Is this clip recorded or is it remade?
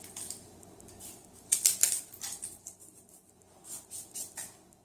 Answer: recorded